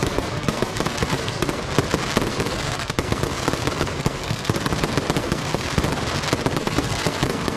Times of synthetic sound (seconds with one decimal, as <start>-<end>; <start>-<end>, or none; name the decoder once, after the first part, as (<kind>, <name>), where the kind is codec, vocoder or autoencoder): 0.0-1.6 (codec, SNAC); 2.3-4.7; 5.2-5.8; 6.6-7.6